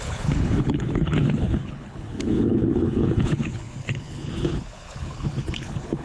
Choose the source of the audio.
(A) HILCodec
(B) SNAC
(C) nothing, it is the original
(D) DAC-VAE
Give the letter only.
A